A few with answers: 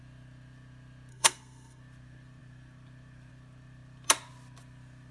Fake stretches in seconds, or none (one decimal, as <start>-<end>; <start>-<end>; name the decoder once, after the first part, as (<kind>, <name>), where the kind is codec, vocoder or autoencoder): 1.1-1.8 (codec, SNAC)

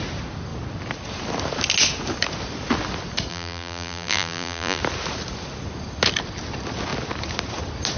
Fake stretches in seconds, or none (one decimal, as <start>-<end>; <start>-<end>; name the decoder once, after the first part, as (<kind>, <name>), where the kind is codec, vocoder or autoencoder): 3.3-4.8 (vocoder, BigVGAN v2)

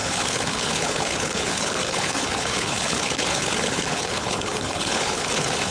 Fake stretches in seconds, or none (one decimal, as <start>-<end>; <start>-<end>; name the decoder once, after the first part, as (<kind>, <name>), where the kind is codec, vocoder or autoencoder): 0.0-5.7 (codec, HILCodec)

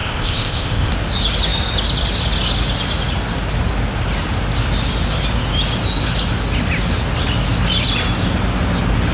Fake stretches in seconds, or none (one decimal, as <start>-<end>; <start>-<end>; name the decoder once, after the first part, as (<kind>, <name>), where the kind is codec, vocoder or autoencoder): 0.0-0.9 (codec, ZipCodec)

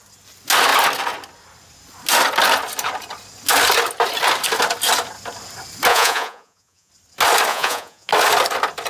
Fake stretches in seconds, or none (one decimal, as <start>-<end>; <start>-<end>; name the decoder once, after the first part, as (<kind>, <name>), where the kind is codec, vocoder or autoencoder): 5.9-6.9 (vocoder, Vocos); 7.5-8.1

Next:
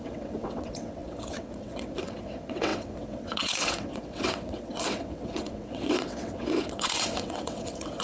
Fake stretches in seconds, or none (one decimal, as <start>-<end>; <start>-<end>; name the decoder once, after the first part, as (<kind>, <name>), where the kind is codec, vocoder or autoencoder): 0.0-8.0 (vocoder, WaveNeXt)

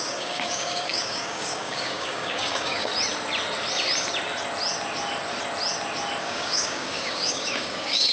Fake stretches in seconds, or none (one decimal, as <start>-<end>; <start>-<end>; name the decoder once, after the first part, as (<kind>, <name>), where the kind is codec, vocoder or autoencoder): 0.0-2.9 (codec, DAC); 6.2-8.1

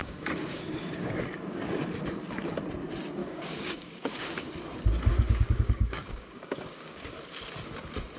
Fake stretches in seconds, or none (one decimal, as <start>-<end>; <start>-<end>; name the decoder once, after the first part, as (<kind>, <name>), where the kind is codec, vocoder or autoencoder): 0.0-1.2 (codec, DAC); 3.2-4.5; 5.1-7.1